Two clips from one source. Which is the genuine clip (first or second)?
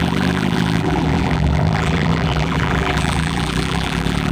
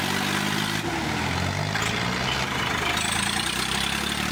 second